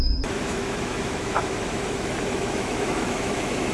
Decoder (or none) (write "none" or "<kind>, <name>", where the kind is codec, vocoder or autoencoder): autoencoder, DAC-VAE